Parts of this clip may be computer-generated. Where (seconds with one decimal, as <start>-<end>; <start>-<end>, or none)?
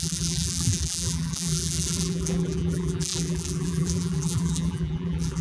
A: 0.0-5.4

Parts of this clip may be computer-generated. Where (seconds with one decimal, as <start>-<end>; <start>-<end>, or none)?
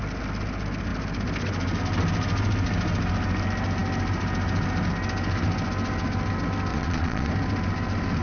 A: 6.7-7.3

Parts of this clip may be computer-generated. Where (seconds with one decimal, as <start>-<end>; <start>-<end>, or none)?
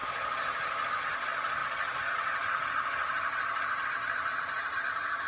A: none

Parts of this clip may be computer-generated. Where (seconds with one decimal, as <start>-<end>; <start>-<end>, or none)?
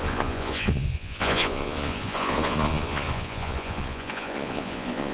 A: 0.0-5.1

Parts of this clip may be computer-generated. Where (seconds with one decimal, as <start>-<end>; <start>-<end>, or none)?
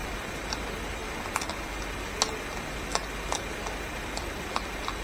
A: 0.0-0.6